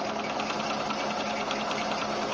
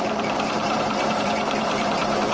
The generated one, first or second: second